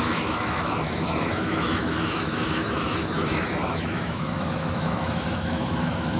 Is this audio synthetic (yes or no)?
yes